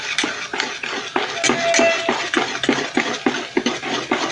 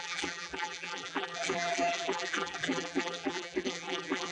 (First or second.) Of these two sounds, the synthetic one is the second